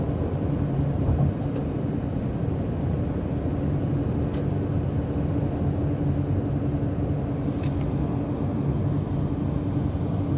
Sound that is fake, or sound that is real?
real